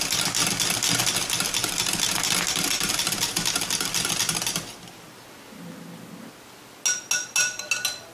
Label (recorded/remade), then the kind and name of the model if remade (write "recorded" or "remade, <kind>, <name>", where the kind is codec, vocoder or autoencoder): recorded